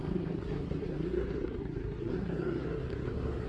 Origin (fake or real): fake